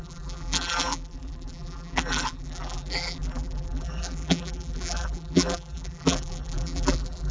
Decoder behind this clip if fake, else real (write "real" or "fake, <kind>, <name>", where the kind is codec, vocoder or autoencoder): fake, vocoder, BigVGAN v2